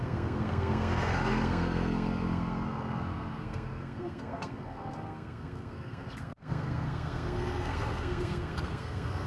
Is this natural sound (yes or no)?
no